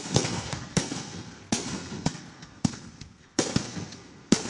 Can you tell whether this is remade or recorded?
remade